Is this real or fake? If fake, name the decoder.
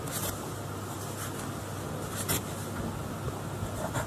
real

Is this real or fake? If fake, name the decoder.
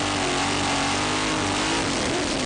real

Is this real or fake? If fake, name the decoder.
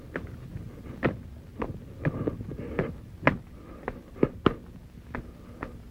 real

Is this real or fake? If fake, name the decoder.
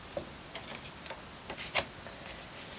real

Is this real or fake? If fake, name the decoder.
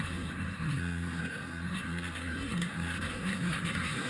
fake, codec, SNAC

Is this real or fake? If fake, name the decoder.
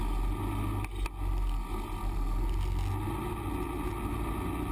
real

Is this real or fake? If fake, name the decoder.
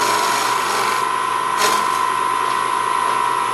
real